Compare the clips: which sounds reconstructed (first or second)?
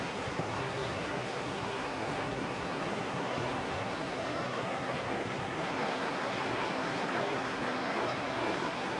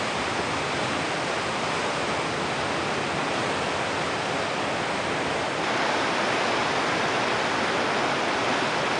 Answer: first